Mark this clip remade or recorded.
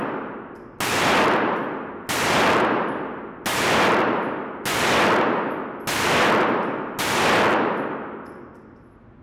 recorded